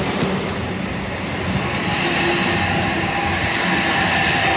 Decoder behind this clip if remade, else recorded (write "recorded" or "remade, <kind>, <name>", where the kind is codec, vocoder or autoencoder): recorded